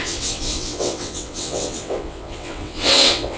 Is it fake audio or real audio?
fake